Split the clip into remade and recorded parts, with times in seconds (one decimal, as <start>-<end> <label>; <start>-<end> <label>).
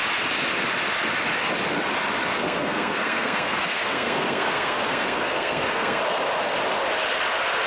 0.0-2.3 recorded; 2.3-6.0 remade; 6.0-7.7 recorded